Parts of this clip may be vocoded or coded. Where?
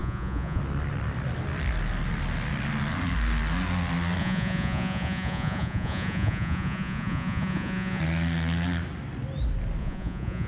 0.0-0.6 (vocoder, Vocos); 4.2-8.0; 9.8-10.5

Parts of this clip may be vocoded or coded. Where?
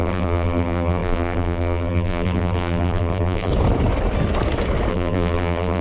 0.0-3.5 (vocoder, BigVGAN v2); 4.9-5.8